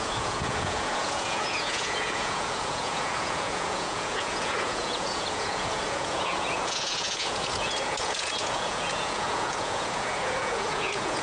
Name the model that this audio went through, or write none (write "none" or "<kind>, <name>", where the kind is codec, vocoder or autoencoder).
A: vocoder, Vocos